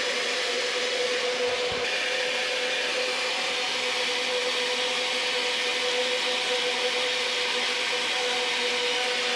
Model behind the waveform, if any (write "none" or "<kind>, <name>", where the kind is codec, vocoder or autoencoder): none